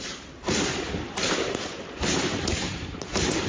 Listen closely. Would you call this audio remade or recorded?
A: remade